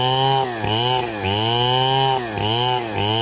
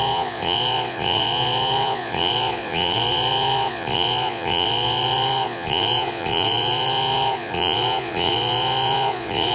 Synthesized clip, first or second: second